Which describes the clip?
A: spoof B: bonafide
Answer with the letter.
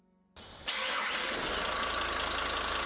B